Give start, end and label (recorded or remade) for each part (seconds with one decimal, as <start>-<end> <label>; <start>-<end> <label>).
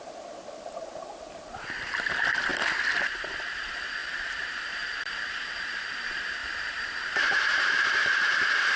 0.0-4.0 recorded; 4.0-5.1 remade; 5.1-6.4 recorded; 6.4-8.8 remade